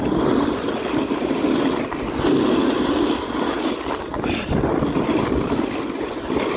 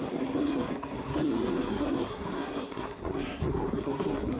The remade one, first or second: second